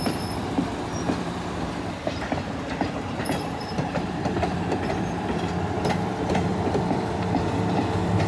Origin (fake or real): fake